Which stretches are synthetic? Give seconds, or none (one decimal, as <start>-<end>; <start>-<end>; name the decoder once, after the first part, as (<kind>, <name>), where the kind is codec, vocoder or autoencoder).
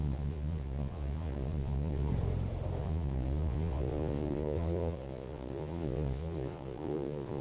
0.0-2.1 (vocoder, Vocos); 2.8-7.4